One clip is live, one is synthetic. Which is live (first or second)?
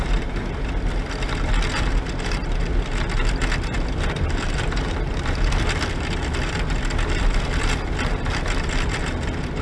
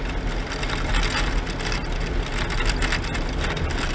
second